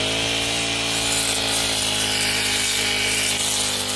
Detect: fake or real real